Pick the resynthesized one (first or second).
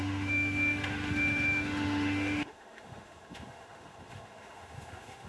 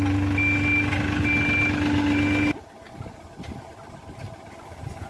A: first